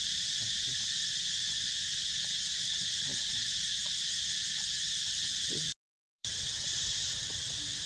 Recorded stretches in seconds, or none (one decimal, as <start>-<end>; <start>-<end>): 0.0-3.1; 5.2-5.9; 6.6-7.9